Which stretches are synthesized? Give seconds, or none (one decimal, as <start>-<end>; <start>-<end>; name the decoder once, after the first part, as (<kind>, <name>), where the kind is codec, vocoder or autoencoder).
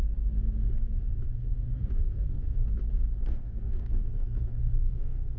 1.4-2.6 (codec, SNAC); 3.2-5.4